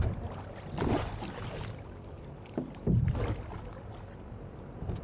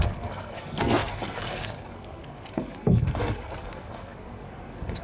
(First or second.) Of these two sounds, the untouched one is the first